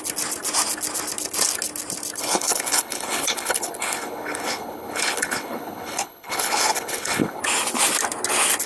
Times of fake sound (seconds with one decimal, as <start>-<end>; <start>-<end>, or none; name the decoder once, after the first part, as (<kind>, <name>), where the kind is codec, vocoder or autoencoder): 2.2-7.4 (codec, HILCodec)